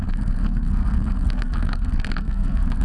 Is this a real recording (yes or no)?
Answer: no